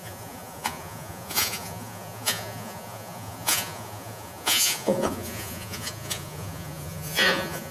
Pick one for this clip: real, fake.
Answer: fake